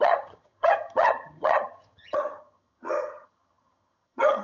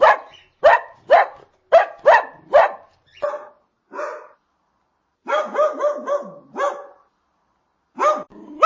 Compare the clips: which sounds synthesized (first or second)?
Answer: first